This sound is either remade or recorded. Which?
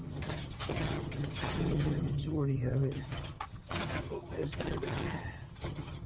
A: remade